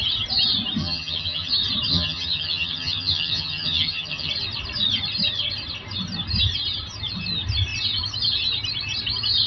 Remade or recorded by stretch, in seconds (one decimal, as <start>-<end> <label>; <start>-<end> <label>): 0.0-0.8 recorded; 0.8-1.5 remade; 1.5-1.9 recorded; 1.9-4.3 remade; 4.3-9.5 recorded